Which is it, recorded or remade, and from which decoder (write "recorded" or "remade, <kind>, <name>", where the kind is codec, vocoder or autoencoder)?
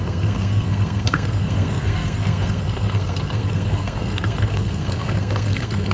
remade, codec, SNAC